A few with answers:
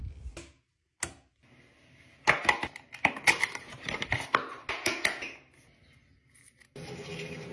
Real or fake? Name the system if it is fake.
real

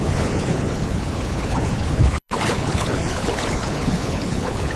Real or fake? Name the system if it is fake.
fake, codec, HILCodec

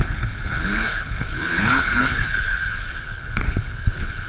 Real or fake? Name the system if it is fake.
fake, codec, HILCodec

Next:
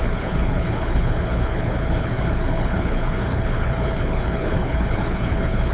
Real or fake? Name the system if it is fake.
fake, codec, HILCodec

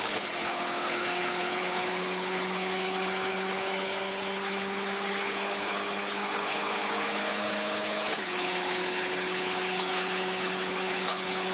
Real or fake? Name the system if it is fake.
fake, codec, HILCodec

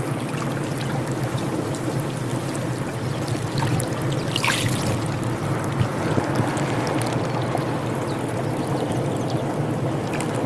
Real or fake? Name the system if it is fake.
real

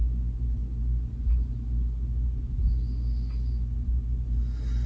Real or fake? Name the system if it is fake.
real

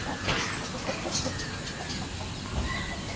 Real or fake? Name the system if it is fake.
real